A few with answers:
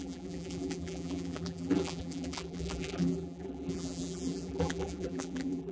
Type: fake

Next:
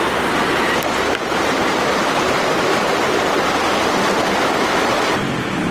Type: real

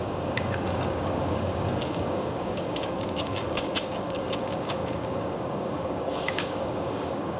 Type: fake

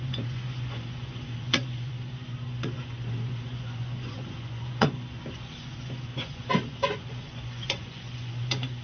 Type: fake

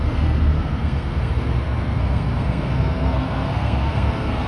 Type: fake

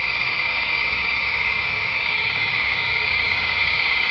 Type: fake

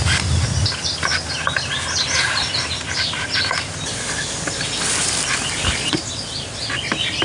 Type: real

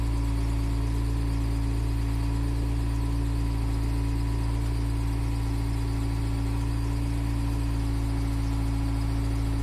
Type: real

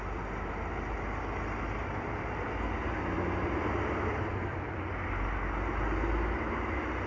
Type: real